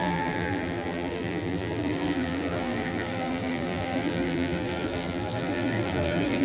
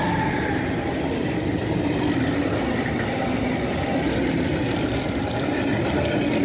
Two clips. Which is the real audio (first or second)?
second